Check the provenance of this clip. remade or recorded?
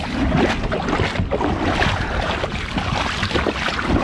recorded